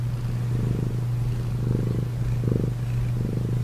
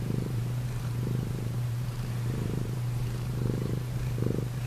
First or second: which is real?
first